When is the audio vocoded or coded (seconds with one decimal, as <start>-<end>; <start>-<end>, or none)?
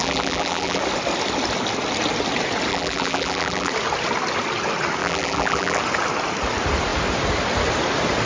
0.0-0.8; 2.7-3.7; 5.0-5.8